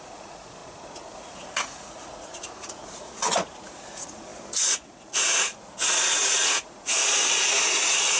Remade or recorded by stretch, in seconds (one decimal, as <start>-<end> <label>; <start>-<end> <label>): 0.0-8.2 remade